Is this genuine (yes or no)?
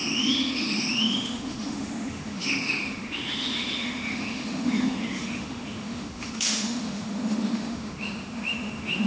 no